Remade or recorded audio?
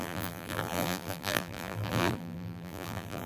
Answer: remade